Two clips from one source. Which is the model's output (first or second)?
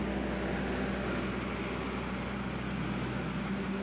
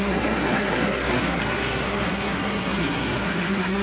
second